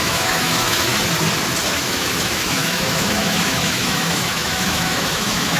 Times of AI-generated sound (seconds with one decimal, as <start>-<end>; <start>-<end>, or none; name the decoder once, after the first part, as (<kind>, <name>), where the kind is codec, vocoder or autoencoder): 0.0-0.9 (autoencoder, DAC-VAE); 1.7-5.6